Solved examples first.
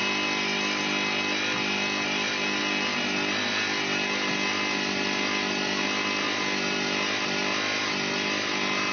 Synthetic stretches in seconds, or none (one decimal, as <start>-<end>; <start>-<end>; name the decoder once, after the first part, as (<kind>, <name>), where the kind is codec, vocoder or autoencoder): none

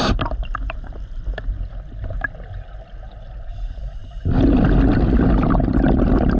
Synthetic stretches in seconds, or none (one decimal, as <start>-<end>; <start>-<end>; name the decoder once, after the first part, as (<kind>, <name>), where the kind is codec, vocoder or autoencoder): none

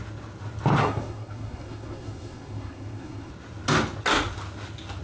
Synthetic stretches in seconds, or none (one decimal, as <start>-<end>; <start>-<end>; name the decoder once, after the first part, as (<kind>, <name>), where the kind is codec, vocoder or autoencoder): 0.8-3.3 (codec, SNAC)